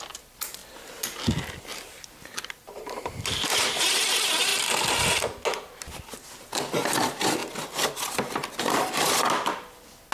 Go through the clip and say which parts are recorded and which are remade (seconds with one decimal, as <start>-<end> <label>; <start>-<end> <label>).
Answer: 0.0-0.6 recorded; 0.6-1.2 remade; 1.2-1.7 recorded; 1.7-3.9 remade; 3.9-10.1 recorded

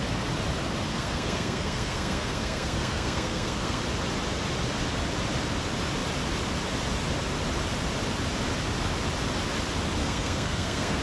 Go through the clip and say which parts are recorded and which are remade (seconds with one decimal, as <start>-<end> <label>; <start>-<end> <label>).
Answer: 0.0-0.9 recorded; 0.9-3.8 remade; 3.8-10.0 recorded; 10.0-11.0 remade

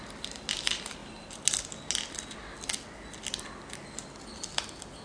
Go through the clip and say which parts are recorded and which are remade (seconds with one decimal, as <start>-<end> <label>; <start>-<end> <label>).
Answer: 0.0-5.0 recorded